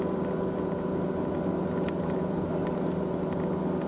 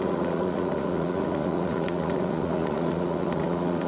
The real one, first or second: first